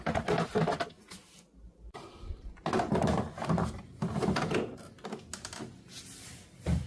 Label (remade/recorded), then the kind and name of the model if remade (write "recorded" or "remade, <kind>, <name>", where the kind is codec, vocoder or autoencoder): recorded